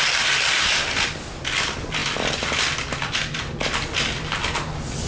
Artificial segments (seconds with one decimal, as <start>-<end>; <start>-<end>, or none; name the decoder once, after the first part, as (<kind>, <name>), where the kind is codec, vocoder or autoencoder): none

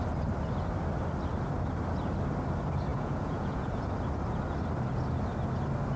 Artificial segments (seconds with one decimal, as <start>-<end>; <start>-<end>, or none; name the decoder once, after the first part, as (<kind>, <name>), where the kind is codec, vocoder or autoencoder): 2.9-3.9 (vocoder, Vocos)

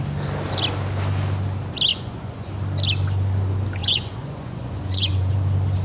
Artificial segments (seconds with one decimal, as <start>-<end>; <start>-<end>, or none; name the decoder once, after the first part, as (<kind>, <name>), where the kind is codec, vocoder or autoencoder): 1.9-2.5 (vocoder, Vocos); 3.8-5.3

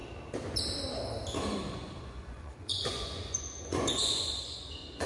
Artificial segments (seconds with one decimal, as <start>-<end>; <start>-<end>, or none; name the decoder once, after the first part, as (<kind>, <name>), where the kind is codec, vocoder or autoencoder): 2.0-5.1 (vocoder, Vocos)

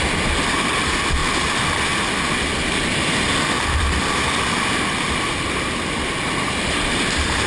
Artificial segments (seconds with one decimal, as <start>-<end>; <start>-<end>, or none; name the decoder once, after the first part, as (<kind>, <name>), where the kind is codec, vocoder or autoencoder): none